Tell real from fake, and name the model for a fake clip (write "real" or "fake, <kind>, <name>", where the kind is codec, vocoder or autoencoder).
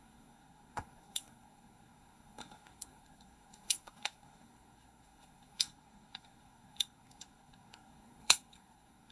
fake, codec, SNAC